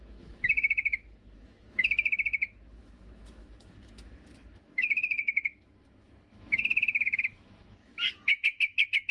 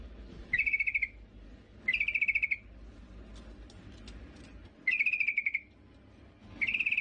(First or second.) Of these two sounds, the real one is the second